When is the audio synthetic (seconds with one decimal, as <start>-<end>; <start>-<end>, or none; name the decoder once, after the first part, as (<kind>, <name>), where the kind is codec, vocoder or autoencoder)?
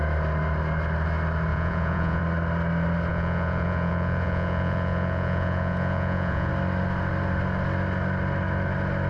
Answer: 1.5-2.2 (vocoder, Vocos); 3.1-6.5